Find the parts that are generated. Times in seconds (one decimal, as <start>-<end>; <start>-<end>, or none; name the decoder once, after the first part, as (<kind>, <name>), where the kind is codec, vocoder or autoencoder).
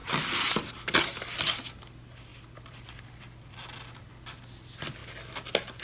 none